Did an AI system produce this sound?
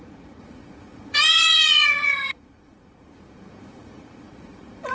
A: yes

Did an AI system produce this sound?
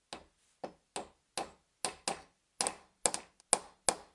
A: no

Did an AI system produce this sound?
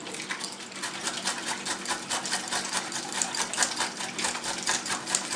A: no